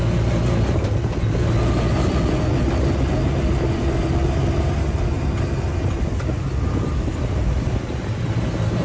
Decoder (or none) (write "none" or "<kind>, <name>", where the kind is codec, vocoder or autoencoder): none